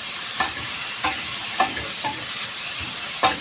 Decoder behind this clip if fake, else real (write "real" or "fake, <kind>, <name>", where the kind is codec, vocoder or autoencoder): fake, vocoder, BigVGAN v2